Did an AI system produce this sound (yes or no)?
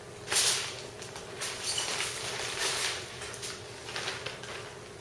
no